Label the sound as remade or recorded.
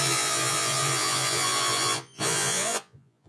remade